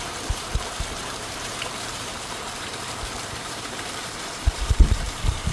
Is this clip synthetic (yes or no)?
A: yes